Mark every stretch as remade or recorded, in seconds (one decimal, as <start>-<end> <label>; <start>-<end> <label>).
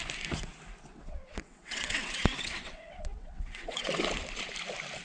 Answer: 0.0-0.9 recorded; 0.9-3.9 remade; 3.9-5.0 recorded